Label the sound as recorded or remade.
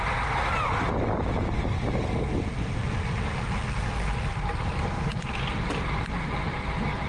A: recorded